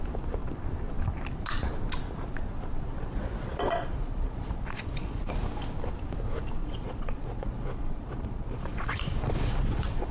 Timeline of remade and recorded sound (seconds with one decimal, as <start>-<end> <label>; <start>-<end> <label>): 0.0-2.9 recorded; 2.9-5.2 remade; 5.2-6.6 recorded; 6.6-10.1 remade